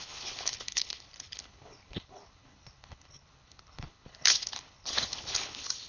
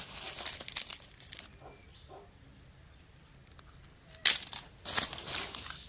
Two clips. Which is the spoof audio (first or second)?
first